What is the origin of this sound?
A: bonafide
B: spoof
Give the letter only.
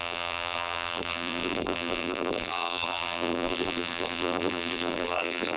B